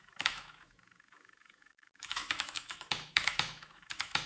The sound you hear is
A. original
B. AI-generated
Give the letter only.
B